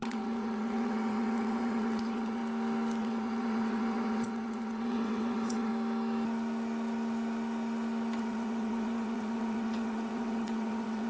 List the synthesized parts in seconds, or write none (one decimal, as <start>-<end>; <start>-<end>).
0.0-2.4; 3.0-5.7; 8.2-11.1

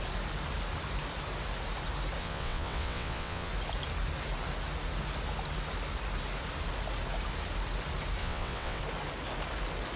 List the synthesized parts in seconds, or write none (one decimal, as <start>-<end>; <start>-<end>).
2.2-3.5; 8.2-8.8

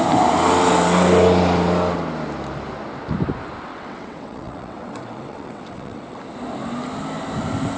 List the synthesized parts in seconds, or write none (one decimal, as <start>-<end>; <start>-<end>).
3.7-6.2

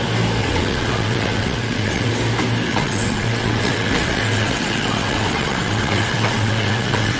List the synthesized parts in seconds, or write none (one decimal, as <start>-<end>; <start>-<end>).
0.4-2.1; 2.7-7.2